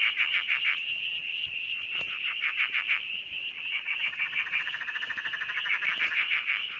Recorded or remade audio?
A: remade